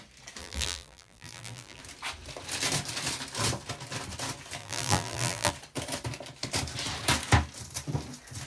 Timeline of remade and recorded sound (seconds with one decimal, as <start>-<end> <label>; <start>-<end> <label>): 0.0-0.4 recorded; 0.4-1.8 remade; 1.8-4.6 recorded; 4.6-5.5 remade; 5.5-8.5 recorded